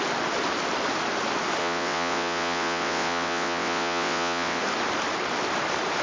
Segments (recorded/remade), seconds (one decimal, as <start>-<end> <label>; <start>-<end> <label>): 0.0-1.6 recorded; 1.6-4.6 remade; 4.6-6.0 recorded

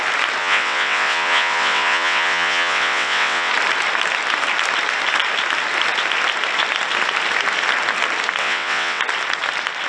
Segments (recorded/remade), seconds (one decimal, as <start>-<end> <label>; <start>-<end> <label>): 0.0-0.4 recorded; 0.4-3.5 remade; 3.5-8.4 recorded; 8.4-9.0 remade; 9.0-9.9 recorded

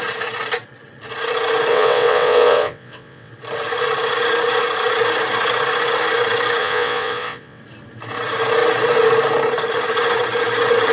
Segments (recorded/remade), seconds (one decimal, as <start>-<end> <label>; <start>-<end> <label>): 0.0-1.7 recorded; 1.7-3.3 remade; 3.3-6.6 recorded; 6.6-7.6 remade; 7.6-10.9 recorded

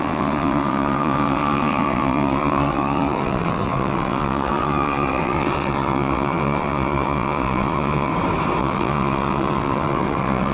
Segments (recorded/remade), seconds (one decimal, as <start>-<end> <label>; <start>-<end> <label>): 0.0-8.1 remade; 8.1-8.6 recorded; 8.6-10.5 remade

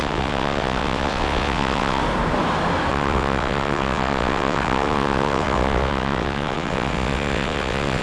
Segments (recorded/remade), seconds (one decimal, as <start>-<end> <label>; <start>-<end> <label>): 0.0-2.0 remade; 2.0-2.9 recorded; 2.9-8.0 remade

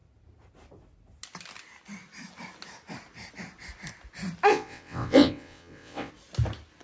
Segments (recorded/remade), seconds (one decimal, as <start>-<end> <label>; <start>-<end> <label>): 0.0-4.5 recorded; 4.5-6.1 remade; 6.1-6.8 recorded